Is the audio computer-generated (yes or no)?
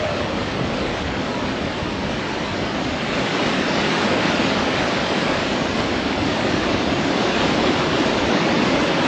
yes